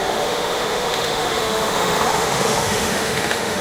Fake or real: fake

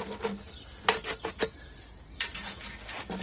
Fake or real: real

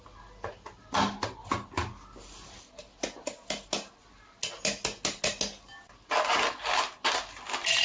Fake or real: real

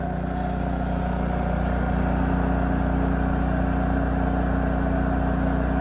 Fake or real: real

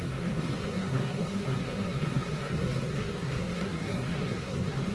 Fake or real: fake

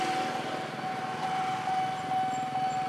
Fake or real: real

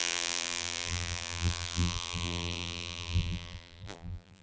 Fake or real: fake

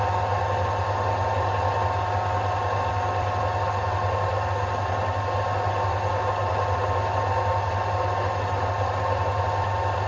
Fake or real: real